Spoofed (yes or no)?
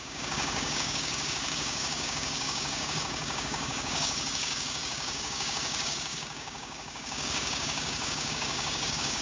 yes